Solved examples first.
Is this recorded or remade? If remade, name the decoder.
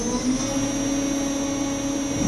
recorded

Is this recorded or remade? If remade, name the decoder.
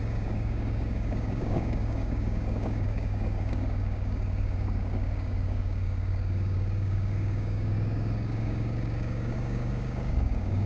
remade, codec, DAC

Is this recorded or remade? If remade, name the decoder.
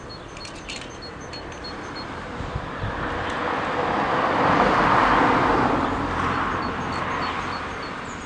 recorded